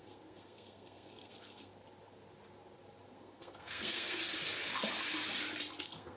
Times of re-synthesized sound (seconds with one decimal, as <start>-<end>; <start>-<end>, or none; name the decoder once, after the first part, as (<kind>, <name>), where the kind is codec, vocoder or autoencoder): 0.0-1.7 (codec, SNAC); 3.1-4.2; 5.8-6.2